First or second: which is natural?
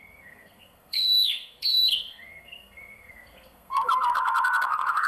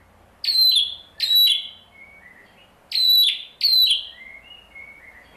second